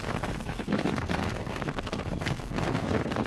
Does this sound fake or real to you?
fake